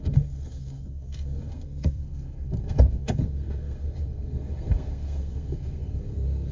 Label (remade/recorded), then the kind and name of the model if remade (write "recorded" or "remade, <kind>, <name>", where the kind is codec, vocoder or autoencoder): remade, codec, SNAC